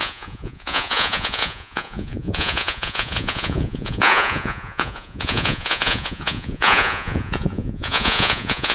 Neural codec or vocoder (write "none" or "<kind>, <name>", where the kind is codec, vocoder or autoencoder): vocoder, Vocos